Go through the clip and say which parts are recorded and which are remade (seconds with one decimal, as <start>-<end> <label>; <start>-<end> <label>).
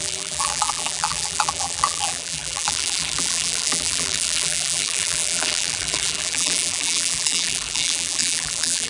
0.0-8.9 remade